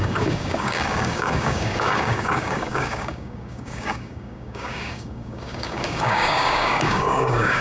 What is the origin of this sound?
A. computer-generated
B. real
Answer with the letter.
A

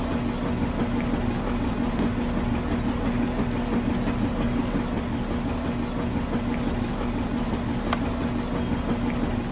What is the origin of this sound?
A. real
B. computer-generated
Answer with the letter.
A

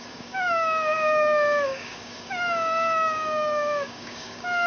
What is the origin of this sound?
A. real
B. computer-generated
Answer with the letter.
B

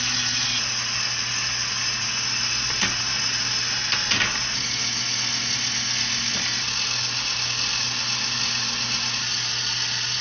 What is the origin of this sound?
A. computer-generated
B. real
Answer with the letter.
B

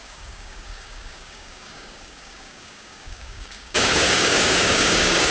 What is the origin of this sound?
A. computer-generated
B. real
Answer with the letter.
A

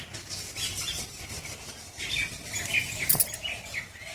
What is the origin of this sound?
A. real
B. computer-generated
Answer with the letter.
A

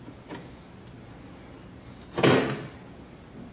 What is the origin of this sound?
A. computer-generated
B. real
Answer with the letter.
B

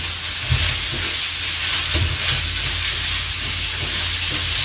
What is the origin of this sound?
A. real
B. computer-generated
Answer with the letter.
A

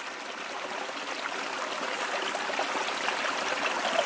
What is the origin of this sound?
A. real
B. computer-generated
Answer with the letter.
A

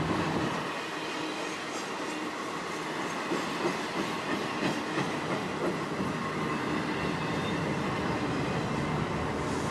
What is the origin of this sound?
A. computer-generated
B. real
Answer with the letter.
B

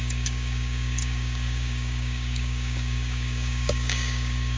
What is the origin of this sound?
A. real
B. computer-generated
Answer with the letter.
B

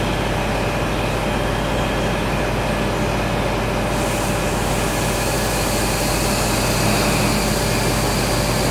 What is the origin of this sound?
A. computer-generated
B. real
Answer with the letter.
B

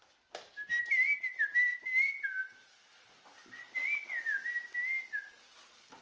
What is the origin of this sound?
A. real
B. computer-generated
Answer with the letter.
A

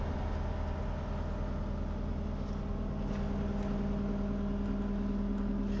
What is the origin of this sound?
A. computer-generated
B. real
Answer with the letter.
B